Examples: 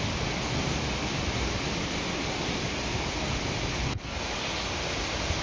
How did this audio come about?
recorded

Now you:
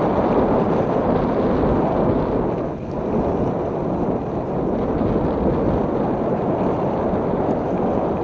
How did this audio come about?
recorded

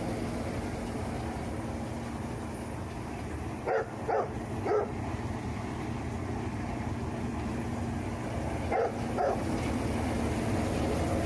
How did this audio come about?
recorded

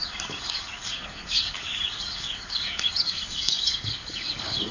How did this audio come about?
remade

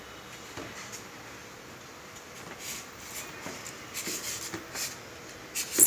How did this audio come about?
recorded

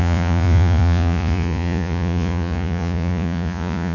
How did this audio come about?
remade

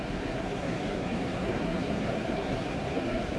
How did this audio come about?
remade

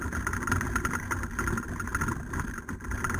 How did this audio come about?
recorded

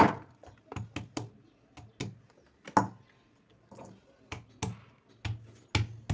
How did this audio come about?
recorded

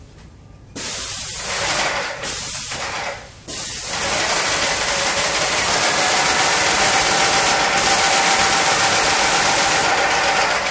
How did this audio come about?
recorded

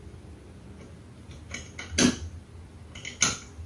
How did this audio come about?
recorded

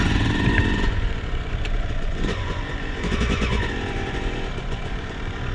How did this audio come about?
remade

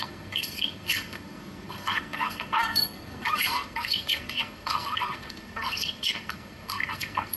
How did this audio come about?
remade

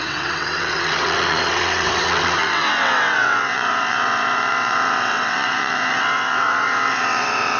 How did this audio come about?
remade